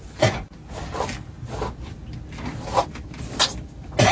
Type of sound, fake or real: real